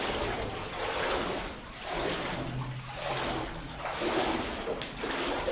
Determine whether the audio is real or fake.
real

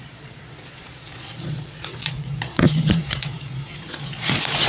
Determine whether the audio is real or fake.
fake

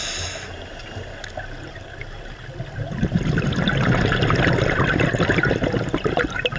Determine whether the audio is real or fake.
real